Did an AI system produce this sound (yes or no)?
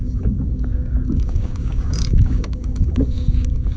yes